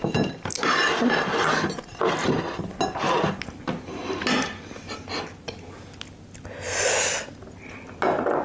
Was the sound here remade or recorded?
recorded